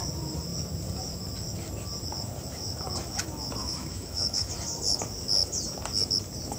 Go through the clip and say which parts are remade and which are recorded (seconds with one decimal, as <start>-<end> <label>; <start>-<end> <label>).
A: 0.0-3.6 recorded; 3.6-4.5 remade; 4.5-6.6 recorded